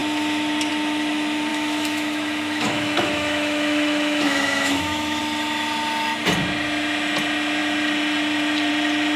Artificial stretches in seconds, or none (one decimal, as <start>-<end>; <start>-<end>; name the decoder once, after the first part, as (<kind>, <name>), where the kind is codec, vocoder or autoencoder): 1.5-5.2 (autoencoder, DAC-VAE)